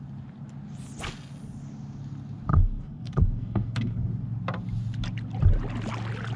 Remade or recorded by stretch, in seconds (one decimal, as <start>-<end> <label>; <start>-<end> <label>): 0.0-2.5 recorded; 2.5-4.1 remade; 4.1-6.4 recorded